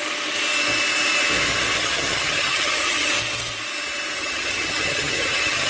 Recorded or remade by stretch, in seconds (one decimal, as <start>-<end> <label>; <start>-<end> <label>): 0.0-1.8 recorded; 1.8-3.1 remade; 3.1-4.2 recorded; 4.2-5.7 remade